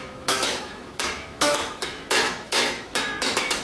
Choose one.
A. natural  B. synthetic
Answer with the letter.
B